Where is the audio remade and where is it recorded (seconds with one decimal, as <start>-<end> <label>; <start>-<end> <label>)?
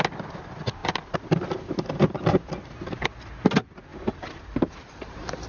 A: 0.0-3.9 recorded; 3.9-5.5 remade